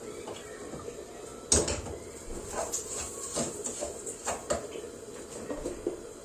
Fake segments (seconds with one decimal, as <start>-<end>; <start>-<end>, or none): none